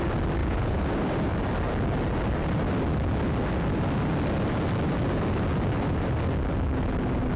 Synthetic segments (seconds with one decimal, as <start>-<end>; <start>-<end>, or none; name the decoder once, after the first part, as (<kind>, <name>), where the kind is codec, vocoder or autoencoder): 0.4-0.9 (vocoder, Vocos)